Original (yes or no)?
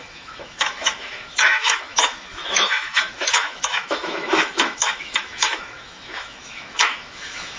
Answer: no